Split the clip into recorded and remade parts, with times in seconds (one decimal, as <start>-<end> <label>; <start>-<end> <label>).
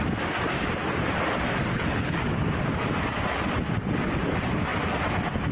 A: 0.0-1.7 recorded; 1.7-2.2 remade; 2.2-5.5 recorded